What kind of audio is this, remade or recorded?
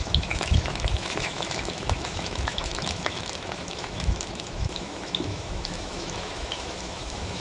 remade